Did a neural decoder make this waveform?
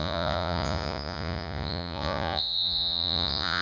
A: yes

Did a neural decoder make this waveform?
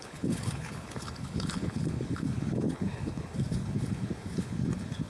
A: yes